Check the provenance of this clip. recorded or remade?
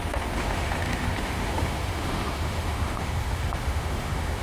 remade